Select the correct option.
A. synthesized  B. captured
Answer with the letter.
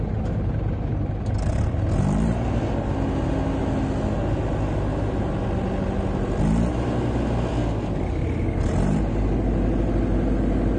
B